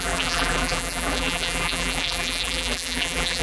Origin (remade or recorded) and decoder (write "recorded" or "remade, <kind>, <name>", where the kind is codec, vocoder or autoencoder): remade, vocoder, BigVGAN v2